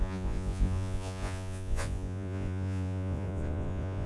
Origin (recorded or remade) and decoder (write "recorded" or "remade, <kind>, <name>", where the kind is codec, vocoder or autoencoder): remade, vocoder, Vocos